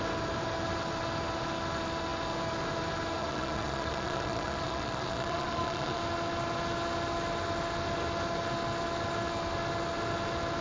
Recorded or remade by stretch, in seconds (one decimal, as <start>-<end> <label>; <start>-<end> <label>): 0.0-3.2 recorded; 3.2-6.0 remade; 6.0-10.6 recorded